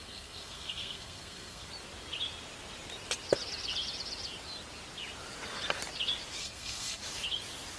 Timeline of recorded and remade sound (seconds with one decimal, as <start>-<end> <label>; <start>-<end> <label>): 0.0-1.7 remade; 1.7-6.4 recorded; 6.4-7.0 remade; 7.0-7.8 recorded